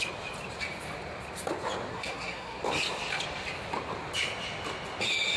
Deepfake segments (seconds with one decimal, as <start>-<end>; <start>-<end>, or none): 1.9-2.6